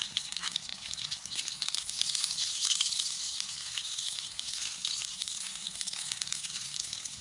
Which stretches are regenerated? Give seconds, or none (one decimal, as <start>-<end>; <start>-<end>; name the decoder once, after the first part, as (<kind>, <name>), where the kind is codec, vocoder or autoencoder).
0.0-7.2 (codec, SNAC)

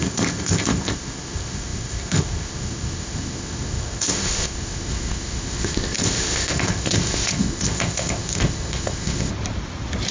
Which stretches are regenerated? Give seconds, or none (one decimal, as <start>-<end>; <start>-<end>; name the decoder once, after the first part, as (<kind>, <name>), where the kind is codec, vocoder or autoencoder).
0.0-9.3 (codec, ZipCodec)

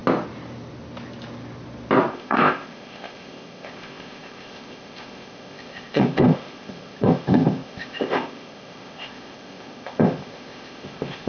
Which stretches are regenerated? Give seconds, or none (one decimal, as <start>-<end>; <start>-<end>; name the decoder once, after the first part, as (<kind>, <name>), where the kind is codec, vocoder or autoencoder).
2.1-11.3 (codec, ZipCodec)

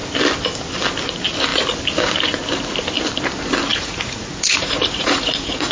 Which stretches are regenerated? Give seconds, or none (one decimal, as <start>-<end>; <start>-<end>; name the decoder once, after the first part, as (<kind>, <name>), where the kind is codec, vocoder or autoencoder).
3.7-5.7 (vocoder, Vocos)

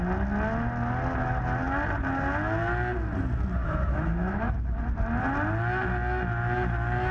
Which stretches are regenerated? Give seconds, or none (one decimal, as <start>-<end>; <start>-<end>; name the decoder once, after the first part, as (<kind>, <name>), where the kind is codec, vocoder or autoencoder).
3.6-4.8 (autoencoder, DAC-VAE)

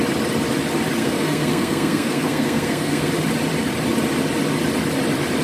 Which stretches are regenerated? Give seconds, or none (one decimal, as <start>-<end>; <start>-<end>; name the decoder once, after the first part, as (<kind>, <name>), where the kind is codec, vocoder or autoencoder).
1.0-3.1 (codec, SNAC)

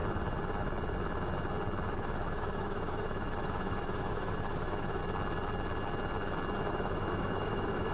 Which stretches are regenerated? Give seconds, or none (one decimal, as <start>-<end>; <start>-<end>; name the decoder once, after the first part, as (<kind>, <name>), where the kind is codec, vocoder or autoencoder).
1.9-5.0 (autoencoder, DAC-VAE); 6.7-7.9

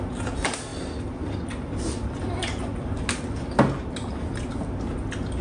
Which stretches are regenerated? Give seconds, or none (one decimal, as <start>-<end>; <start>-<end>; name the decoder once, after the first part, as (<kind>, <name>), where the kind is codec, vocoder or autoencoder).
none